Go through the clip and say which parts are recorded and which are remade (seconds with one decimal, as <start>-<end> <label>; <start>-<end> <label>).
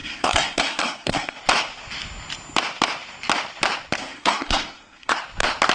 0.0-1.4 remade; 1.4-4.0 recorded; 4.0-5.2 remade; 5.2-5.7 recorded